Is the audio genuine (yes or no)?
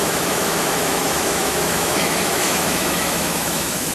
no